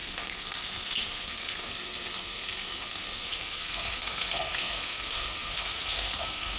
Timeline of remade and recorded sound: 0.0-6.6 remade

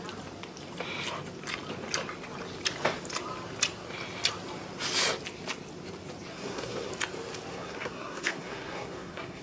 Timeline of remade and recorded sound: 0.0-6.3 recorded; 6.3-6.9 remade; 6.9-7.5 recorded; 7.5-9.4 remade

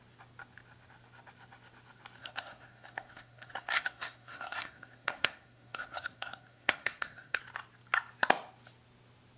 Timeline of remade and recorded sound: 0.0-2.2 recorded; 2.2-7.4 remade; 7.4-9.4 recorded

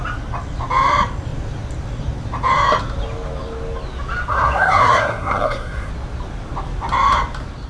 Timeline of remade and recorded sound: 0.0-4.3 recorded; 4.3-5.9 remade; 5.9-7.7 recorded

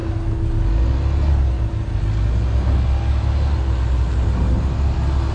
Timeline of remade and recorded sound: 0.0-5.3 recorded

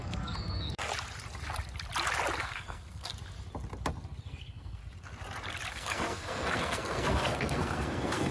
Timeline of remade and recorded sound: 0.0-0.9 remade; 0.9-2.4 recorded; 2.4-3.1 remade; 3.1-4.2 recorded; 4.2-4.8 remade; 4.8-5.7 recorded; 5.7-8.3 remade

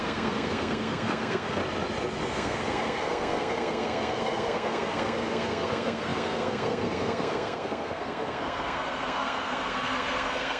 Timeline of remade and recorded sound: 0.0-1.6 remade; 1.6-2.2 recorded; 2.2-10.6 remade